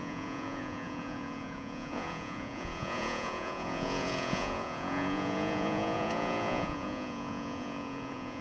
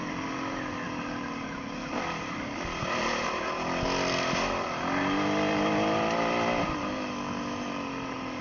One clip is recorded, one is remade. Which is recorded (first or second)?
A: second